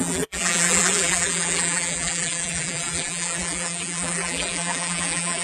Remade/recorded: remade